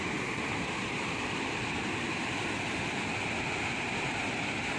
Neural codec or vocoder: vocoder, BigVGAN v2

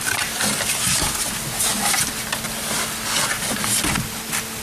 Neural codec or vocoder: none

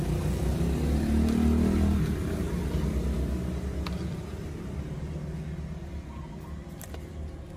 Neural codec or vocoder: none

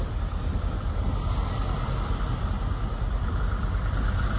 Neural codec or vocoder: none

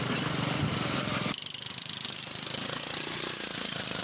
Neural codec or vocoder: vocoder, BigVGAN v2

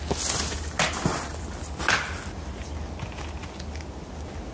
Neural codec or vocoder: none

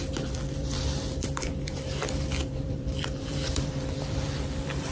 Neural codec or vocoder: vocoder, BigVGAN v2